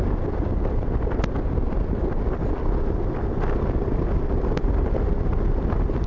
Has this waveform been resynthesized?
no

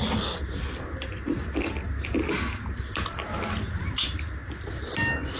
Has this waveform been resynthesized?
no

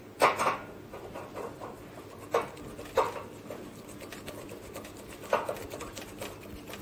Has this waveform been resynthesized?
no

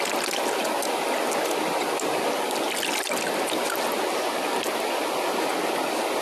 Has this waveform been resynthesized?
no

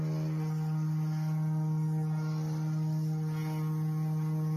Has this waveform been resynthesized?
no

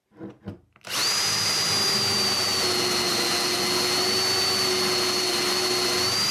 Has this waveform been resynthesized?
no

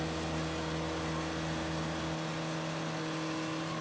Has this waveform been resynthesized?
no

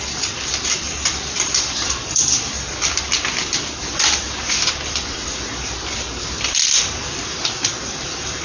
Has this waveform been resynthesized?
yes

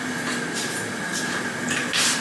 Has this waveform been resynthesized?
yes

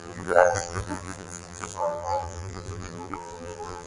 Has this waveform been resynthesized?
yes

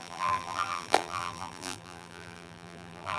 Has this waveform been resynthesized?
yes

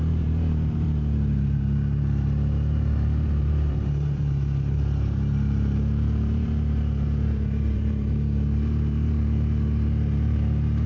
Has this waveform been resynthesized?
yes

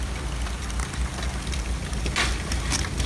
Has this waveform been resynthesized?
no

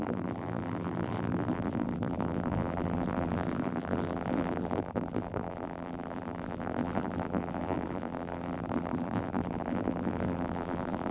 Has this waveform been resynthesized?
yes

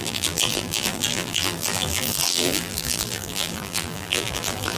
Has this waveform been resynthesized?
yes